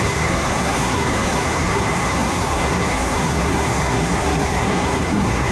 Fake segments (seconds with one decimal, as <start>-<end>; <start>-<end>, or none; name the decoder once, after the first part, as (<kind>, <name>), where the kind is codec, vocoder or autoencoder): 0.0-5.5 (codec, SNAC)

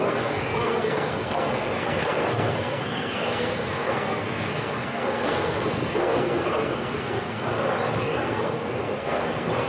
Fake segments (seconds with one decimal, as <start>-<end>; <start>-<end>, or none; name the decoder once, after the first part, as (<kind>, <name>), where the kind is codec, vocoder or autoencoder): 0.0-7.5 (codec, SNAC); 8.0-9.7

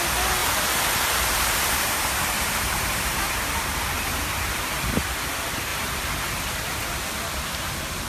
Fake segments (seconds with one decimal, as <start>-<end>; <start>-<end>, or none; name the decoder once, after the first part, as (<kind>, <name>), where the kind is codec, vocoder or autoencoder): 0.4-3.9 (vocoder, BigVGAN v2); 5.7-6.3

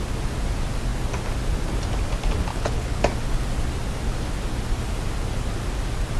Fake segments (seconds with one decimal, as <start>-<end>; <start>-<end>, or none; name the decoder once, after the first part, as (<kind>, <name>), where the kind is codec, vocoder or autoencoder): 2.5-3.0 (codec, HILCodec)

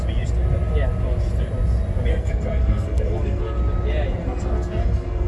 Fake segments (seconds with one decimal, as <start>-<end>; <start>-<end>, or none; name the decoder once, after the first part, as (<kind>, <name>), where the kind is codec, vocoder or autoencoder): 2.1-3.6 (codec, SNAC); 4.2-5.3

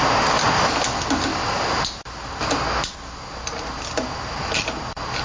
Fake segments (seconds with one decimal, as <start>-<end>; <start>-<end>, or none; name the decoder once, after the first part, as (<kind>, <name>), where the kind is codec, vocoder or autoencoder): none

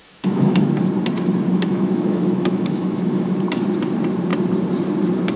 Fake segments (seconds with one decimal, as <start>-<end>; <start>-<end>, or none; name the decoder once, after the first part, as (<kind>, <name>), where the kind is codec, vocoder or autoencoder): 0.0-0.7 (autoencoder, DAC-VAE); 1.5-3.3

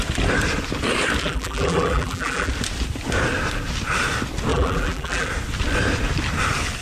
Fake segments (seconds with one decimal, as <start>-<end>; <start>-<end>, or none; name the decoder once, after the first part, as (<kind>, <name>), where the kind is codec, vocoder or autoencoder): 1.2-2.5 (vocoder, BigVGAN v2); 4.5-5.3